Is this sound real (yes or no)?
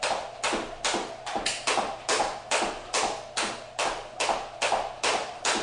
yes